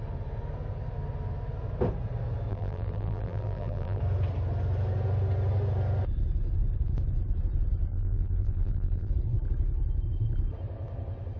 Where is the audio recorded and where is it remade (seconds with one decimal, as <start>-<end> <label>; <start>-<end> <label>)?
0.0-2.5 recorded; 2.5-4.0 remade; 4.0-7.9 recorded; 7.9-9.1 remade; 9.1-11.4 recorded